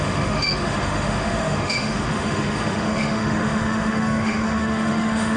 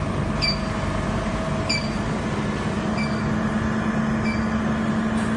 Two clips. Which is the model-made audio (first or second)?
first